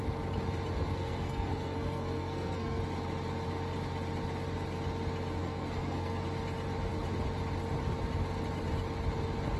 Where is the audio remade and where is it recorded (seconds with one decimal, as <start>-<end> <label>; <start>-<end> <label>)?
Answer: 0.0-0.8 recorded; 0.8-2.8 remade; 2.8-5.4 recorded; 5.4-6.2 remade; 6.2-9.6 recorded